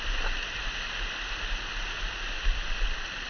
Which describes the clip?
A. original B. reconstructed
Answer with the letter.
B